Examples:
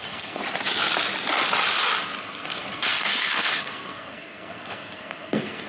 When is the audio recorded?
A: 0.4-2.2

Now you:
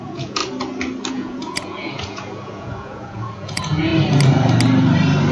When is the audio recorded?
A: 0.4-1.1; 3.9-5.3

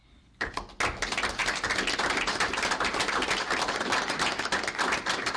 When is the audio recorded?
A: 0.5-5.4

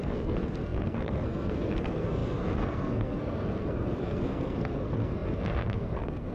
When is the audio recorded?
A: none

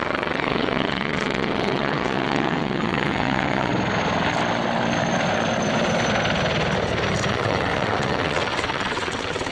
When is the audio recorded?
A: 3.7-7.3

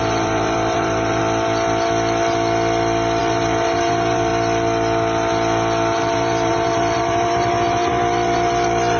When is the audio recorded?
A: 1.2-3.2; 4.3-6.0

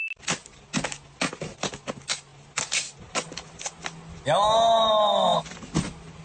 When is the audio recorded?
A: 0.0-5.3

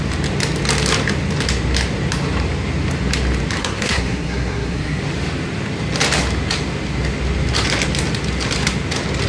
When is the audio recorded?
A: 0.0-3.6; 5.0-9.3